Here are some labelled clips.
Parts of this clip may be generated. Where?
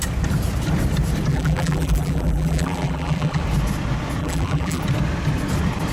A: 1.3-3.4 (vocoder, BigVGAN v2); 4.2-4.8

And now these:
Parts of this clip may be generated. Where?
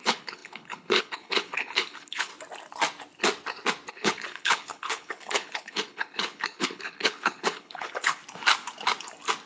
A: 0.0-2.3 (codec, HILCodec); 3.9-8.2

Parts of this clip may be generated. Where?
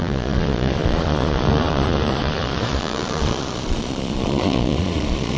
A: 0.0-5.4 (vocoder, Vocos)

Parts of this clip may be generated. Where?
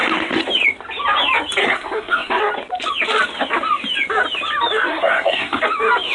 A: 1.6-2.4 (codec, SNAC); 4.9-5.6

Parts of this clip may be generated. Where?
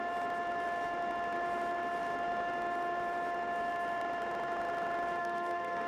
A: 5.2-5.9 (codec, SNAC)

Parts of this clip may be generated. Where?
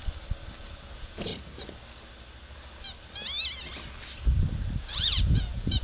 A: 0.6-1.3 (vocoder, Vocos); 4.8-5.8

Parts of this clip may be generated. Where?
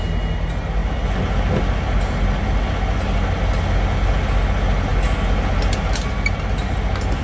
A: none